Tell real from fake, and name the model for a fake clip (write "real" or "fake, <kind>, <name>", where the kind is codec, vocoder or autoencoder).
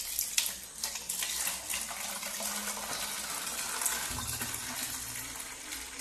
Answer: real